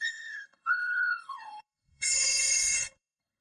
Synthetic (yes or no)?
yes